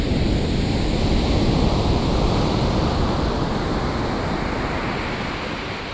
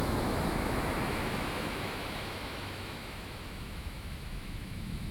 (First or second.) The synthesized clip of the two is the second